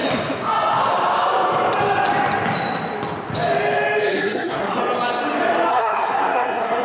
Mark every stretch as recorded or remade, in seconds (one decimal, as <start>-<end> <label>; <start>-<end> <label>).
0.0-4.1 recorded; 4.1-4.8 remade; 4.8-5.7 recorded; 5.7-6.8 remade